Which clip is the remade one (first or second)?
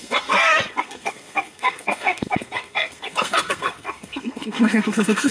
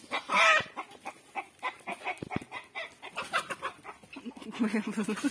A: first